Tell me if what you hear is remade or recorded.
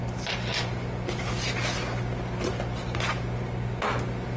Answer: recorded